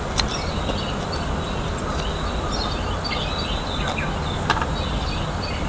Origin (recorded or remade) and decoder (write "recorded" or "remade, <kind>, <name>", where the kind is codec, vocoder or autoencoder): recorded